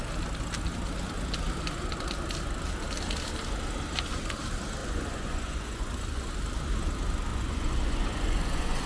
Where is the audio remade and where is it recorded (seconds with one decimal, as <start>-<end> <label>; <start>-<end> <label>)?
0.0-4.8 recorded; 4.8-6.3 remade; 6.3-7.3 recorded; 7.3-8.9 remade